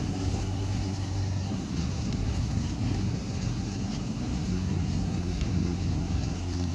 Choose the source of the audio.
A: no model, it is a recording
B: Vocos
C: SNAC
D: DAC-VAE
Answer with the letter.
C